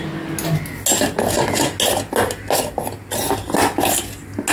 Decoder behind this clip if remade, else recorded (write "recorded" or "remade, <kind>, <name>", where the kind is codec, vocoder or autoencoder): recorded